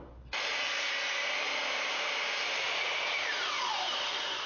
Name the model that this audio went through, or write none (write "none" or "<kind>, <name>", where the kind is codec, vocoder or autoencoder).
vocoder, BigVGAN v2